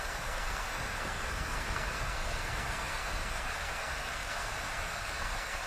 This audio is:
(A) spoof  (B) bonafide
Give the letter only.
A